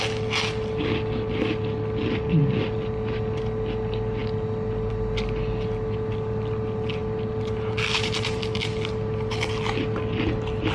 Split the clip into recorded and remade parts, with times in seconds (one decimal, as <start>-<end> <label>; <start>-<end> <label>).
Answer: 0.0-10.7 recorded